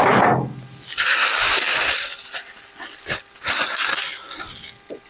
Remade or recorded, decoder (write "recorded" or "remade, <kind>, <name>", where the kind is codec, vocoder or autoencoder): recorded